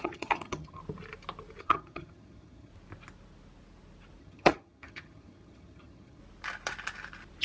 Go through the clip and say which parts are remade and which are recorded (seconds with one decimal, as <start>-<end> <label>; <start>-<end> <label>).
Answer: 0.0-0.8 remade; 0.8-1.6 recorded; 1.6-2.7 remade; 2.7-4.2 recorded; 4.2-6.2 remade; 6.2-7.4 recorded